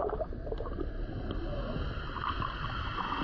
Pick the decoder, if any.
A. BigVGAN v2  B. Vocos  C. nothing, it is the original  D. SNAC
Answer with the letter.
C